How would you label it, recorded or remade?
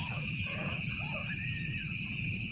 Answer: remade